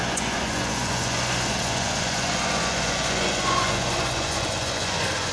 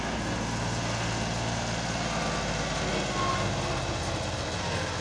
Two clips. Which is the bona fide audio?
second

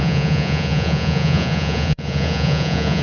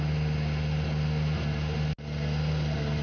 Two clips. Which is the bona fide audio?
second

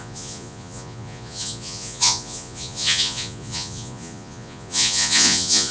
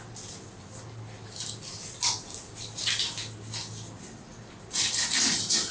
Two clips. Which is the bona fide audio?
second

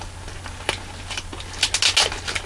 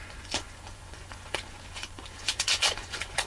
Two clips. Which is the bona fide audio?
first